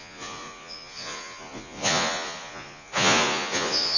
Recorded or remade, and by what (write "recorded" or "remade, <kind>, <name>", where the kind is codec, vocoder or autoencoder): remade, vocoder, Vocos